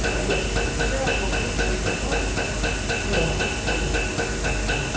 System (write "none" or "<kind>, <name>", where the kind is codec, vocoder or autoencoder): none